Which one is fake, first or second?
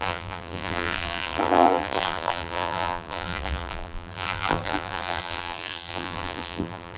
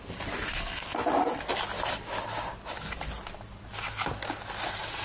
first